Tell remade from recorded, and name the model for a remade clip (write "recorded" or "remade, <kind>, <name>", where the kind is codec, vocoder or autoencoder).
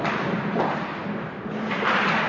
recorded